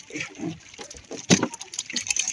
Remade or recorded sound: remade